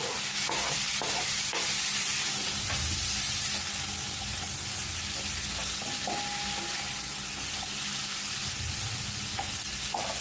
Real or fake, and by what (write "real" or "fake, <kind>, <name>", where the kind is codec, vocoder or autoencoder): real